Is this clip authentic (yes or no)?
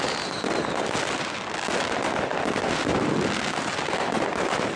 yes